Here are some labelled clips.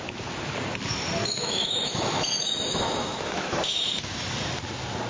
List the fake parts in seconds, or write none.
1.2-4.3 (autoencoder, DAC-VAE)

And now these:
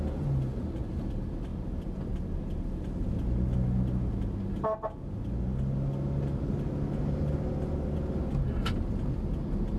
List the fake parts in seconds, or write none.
none

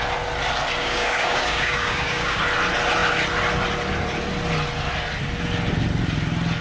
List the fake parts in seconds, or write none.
0.8-2.4 (codec, DAC)

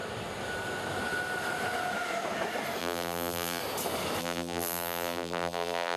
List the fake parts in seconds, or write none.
2.8-3.6 (vocoder, BigVGAN v2); 4.2-6.0